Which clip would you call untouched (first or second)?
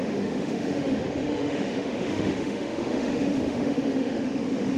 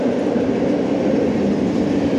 second